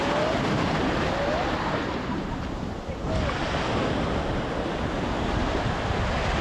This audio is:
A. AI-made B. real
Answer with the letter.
B